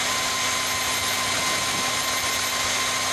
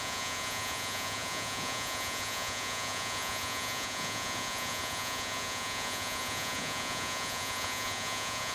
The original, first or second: first